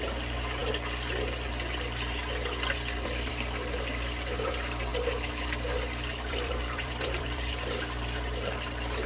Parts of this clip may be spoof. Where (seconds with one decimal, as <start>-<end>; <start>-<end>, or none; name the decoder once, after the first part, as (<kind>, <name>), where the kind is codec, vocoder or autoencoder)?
4.9-7.5 (vocoder, BigVGAN v2)